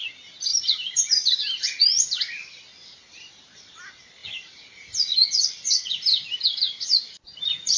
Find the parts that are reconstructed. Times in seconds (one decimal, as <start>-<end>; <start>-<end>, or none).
0.5-3.8; 4.2-7.2